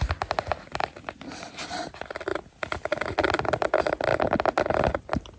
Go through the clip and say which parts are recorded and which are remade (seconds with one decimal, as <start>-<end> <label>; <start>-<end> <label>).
0.0-5.4 recorded